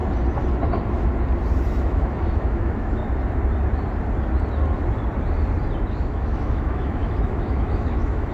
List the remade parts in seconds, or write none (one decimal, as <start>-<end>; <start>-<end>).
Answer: 1.8-3.0; 5.9-8.3